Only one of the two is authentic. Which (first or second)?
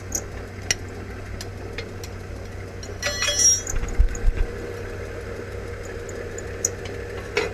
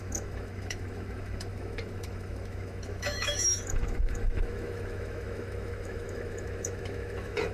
first